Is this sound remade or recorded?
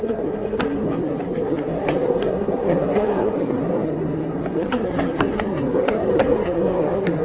remade